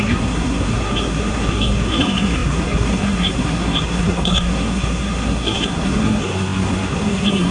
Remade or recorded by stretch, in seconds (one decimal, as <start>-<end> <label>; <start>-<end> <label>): 0.0-7.5 remade